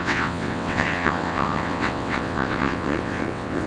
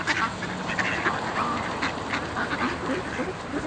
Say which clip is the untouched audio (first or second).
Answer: second